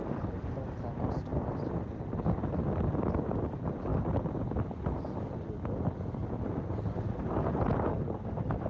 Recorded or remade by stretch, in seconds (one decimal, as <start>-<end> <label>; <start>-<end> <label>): 0.0-8.7 recorded